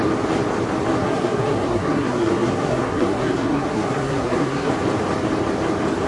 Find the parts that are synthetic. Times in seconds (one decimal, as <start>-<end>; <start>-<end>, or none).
1.0-4.7